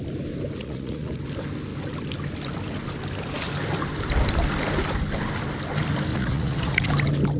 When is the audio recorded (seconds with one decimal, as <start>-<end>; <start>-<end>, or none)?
0.0-0.6; 1.2-6.1; 6.9-7.4